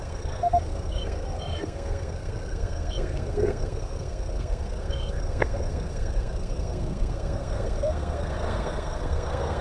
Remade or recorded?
remade